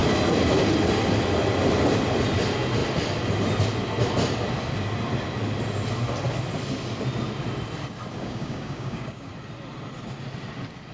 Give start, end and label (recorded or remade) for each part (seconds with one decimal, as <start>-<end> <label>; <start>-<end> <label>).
0.0-8.2 recorded; 8.2-9.3 remade; 9.3-10.9 recorded